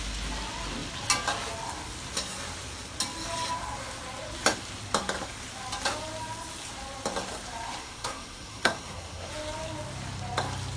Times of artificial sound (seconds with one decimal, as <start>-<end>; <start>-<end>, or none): 7.8-9.3